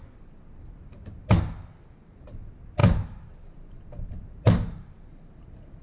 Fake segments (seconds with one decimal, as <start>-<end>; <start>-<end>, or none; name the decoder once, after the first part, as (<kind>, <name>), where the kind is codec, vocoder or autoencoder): 2.8-5.8 (vocoder, BigVGAN v2)